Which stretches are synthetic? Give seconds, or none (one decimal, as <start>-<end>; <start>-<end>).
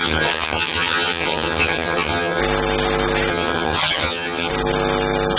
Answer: 0.0-2.4; 3.3-4.5